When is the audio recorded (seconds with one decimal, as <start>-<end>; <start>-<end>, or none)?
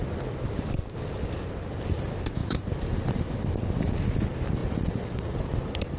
0.0-2.4; 4.0-4.6; 5.6-6.0